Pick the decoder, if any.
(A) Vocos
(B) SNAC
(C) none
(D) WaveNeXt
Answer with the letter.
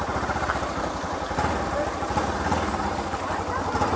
C